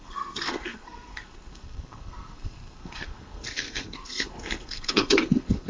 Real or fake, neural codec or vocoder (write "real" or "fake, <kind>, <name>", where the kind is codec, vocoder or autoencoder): fake, codec, SNAC